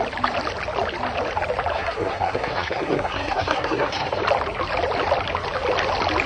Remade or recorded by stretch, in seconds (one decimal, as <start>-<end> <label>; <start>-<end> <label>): 0.0-1.7 recorded; 1.7-4.2 remade; 4.2-6.3 recorded